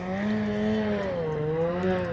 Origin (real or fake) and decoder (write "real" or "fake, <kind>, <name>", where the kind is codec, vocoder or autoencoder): real